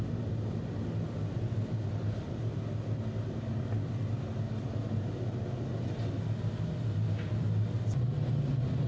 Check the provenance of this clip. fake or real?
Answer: real